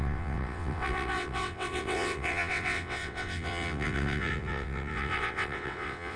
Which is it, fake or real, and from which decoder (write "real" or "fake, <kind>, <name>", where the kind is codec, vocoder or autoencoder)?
fake, vocoder, WaveNeXt